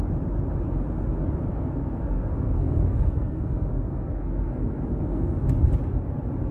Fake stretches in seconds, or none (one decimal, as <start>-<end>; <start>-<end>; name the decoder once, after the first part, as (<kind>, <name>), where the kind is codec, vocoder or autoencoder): 1.5-5.4 (codec, SNAC)